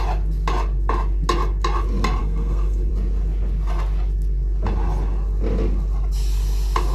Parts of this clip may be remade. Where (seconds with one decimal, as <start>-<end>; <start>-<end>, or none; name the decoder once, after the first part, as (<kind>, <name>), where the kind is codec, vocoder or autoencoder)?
2.2-2.9 (codec, SNAC)